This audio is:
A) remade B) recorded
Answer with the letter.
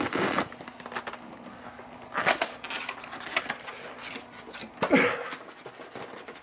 B